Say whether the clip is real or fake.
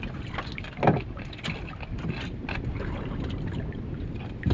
real